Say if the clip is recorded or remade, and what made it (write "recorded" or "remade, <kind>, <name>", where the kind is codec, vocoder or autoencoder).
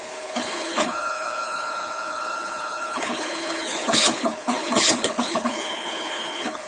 remade, codec, HILCodec